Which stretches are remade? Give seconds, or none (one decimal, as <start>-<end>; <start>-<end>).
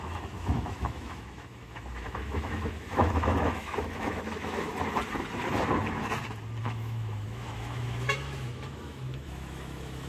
0.0-4.7; 6.6-10.1